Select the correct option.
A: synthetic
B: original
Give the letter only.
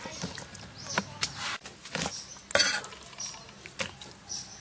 B